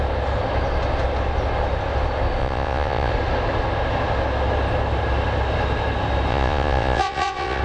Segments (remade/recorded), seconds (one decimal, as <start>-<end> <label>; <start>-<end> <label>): 0.0-2.4 recorded; 2.4-3.1 remade; 3.1-6.3 recorded; 6.3-7.6 remade